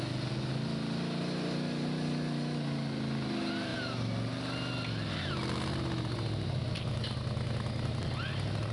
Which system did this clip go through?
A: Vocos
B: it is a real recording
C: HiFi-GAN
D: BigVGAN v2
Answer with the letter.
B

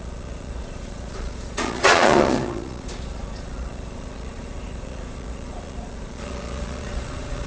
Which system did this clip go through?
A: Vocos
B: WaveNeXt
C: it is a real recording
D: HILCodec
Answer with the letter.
A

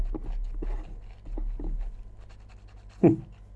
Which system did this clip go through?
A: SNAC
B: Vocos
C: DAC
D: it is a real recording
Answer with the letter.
D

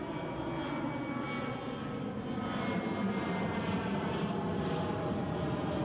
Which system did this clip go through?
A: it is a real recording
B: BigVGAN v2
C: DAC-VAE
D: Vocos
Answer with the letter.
A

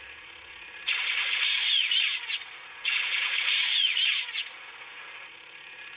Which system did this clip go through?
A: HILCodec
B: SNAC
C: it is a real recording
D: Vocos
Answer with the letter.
D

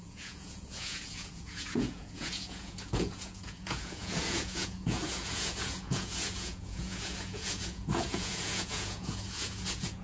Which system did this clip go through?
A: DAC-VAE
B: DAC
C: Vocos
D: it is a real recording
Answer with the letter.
C